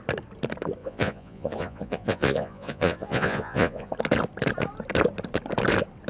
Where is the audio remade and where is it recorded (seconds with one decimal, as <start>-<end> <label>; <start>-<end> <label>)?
0.0-0.8 recorded; 0.8-3.9 remade; 3.9-6.1 recorded